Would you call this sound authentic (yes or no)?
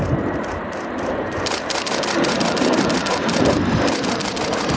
no